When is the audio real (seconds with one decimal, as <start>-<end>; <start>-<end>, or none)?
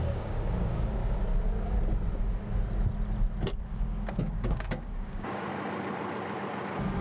1.0-3.6; 5.5-7.0